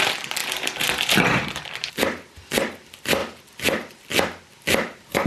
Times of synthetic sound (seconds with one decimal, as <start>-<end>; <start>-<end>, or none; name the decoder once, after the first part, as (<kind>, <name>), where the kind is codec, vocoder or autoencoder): 0.4-1.7 (vocoder, BigVGAN v2); 3.2-4.1